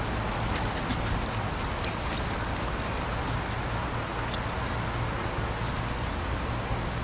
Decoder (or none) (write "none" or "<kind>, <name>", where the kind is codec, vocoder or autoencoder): none